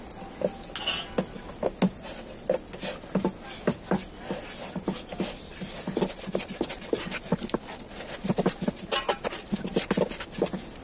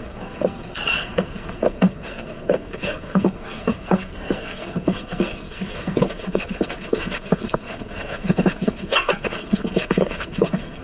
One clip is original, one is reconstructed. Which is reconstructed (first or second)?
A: second